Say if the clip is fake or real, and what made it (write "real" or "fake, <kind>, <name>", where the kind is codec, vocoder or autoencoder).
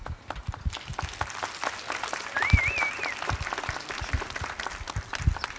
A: real